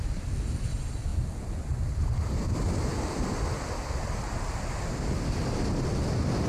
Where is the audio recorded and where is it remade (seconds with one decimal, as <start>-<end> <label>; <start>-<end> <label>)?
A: 0.0-6.5 recorded